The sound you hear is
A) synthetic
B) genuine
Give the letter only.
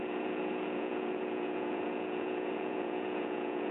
A